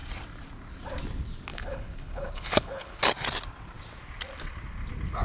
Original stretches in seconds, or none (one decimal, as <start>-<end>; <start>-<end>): 0.0-1.5; 3.0-5.2